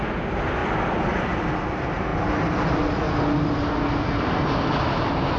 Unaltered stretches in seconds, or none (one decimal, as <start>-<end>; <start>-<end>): 0.0-5.4